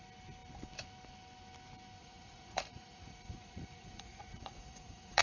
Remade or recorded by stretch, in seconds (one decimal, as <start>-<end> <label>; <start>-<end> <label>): 0.0-2.0 recorded; 2.0-5.2 remade